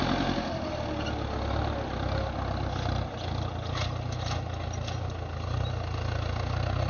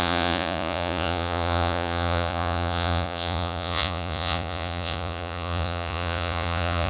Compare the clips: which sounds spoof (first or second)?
second